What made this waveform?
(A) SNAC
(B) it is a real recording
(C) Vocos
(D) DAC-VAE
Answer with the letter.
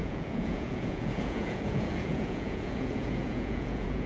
C